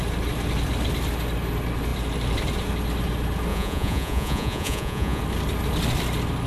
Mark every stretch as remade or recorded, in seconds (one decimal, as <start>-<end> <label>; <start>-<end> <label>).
0.0-3.5 recorded; 3.5-5.2 remade; 5.2-6.5 recorded